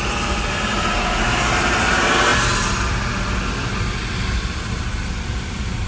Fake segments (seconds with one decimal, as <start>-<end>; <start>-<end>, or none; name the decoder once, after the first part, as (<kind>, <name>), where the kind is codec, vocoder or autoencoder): none